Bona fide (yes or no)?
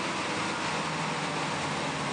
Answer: yes